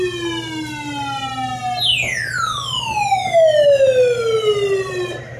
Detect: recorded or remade recorded